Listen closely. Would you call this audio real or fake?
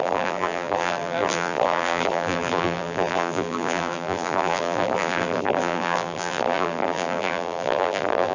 fake